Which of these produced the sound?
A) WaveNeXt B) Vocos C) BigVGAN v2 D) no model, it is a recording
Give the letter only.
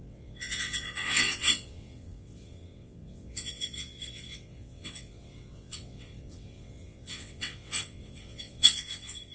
A